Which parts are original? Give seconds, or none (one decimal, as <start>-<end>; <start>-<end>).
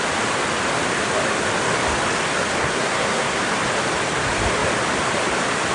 0.0-2.6; 3.4-5.7